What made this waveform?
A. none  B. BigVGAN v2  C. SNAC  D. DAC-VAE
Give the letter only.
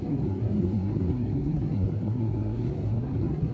C